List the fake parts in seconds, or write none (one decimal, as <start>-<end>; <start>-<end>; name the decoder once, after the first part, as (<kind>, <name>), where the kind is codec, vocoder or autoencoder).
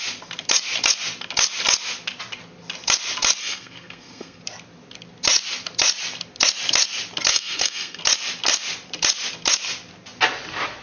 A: 3.4-4.4 (codec, SNAC); 7.3-8.0